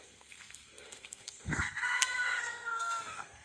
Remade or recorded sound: remade